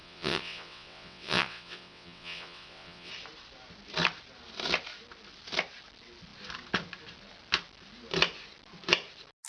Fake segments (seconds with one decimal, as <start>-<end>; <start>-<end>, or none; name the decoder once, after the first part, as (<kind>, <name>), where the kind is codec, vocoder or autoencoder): 0.0-3.1 (vocoder, WaveNeXt)